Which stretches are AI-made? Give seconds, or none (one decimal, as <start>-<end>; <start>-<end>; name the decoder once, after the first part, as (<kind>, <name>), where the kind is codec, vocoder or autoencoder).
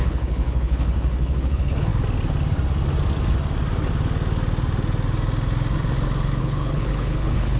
0.0-1.9 (codec, HILCodec); 6.4-7.6